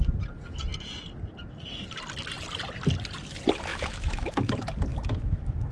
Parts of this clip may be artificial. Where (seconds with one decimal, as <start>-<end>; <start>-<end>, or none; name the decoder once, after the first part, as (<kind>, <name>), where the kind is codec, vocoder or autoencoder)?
3.7-4.5 (autoencoder, DAC-VAE); 4.9-5.7